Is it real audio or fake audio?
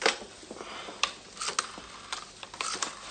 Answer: real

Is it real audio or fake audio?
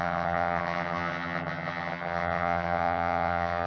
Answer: fake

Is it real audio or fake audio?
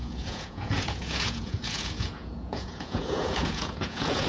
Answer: fake